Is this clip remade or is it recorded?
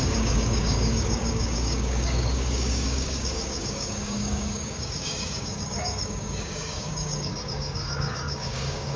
remade